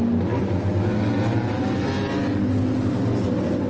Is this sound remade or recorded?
recorded